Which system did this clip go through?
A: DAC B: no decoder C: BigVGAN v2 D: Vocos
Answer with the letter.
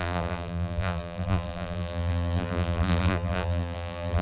C